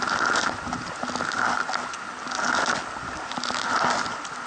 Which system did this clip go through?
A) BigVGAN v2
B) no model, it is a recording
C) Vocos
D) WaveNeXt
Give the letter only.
B